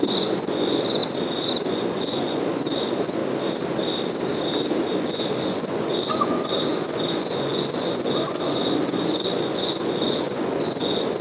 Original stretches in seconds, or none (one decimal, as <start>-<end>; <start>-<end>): 1.0-1.5; 3.2-4.9